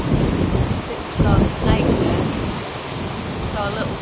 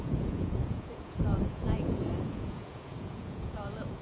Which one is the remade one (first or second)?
second